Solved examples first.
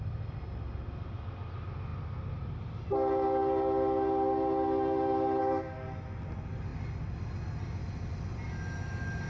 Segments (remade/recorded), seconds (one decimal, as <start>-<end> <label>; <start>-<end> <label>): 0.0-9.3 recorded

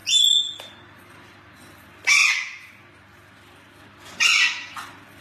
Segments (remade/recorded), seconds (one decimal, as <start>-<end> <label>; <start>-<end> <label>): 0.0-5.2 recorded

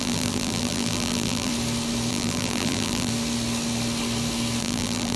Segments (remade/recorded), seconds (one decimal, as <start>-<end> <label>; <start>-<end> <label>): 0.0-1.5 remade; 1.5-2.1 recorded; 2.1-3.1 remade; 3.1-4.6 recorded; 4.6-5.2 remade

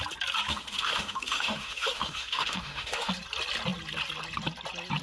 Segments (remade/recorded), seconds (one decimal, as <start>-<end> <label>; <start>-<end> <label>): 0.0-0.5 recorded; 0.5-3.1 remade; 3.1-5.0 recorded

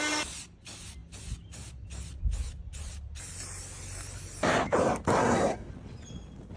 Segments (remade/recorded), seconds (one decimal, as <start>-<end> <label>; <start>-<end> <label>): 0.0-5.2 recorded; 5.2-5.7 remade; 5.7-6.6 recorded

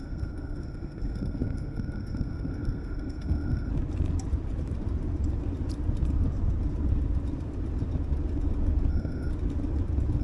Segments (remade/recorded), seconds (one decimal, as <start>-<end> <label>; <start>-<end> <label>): 0.0-3.7 remade; 3.7-8.9 recorded; 8.9-9.3 remade; 9.3-10.2 recorded

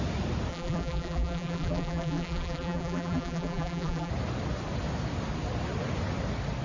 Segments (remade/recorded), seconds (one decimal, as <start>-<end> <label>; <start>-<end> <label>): 0.0-0.5 recorded; 0.5-4.1 remade; 4.1-6.6 recorded

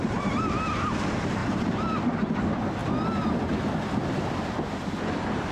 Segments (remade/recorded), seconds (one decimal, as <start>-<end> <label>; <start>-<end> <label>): 0.0-2.8 remade; 2.8-5.5 recorded